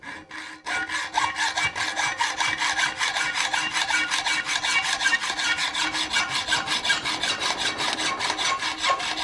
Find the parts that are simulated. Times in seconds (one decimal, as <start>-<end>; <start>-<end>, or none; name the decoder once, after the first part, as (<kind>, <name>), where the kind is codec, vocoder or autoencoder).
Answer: none